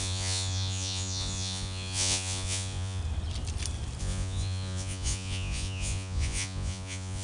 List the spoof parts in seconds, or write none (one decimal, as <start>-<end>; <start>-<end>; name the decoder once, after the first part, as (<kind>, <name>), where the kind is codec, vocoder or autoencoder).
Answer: 0.0-3.0 (vocoder, Vocos); 4.0-7.2